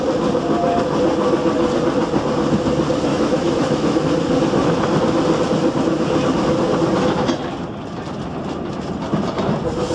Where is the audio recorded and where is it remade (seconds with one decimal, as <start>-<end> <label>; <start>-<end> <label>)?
0.0-3.1 recorded; 3.1-4.0 remade; 4.0-9.9 recorded